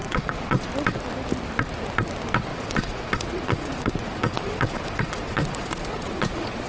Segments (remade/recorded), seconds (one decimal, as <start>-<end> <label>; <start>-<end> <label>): 0.0-0.7 remade; 0.7-2.5 recorded; 2.5-6.7 remade

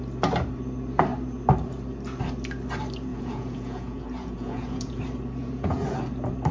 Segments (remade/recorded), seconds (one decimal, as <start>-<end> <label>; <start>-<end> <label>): 0.0-3.1 recorded; 3.1-5.0 remade; 5.0-5.4 recorded; 5.4-6.0 remade; 6.0-6.5 recorded